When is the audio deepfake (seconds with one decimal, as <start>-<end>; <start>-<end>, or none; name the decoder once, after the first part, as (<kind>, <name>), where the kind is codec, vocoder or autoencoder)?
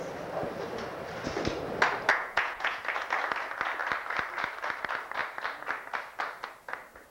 2.1-2.8 (vocoder, Vocos)